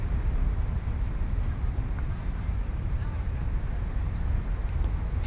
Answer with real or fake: fake